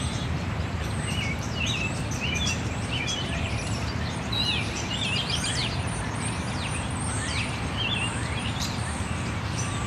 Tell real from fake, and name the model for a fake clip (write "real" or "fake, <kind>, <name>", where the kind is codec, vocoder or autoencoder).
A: fake, vocoder, BigVGAN v2